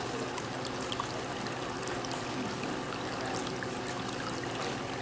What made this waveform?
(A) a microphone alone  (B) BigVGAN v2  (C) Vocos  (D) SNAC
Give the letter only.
A